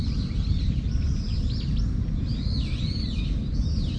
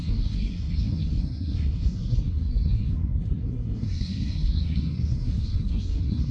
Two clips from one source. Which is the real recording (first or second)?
first